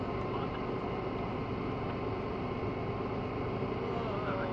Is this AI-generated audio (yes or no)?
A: no